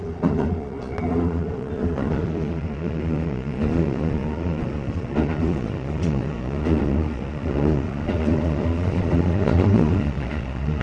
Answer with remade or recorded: remade